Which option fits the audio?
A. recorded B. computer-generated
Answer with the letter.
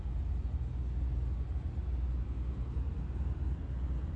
A